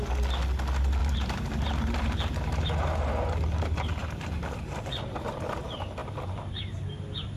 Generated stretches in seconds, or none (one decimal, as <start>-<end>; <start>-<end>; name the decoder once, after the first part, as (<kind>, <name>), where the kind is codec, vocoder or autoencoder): 1.0-3.1 (vocoder, BigVGAN v2); 4.0-5.6; 6.0-6.8